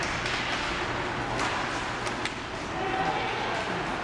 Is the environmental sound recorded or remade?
recorded